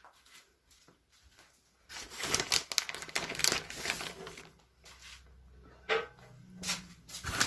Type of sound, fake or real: real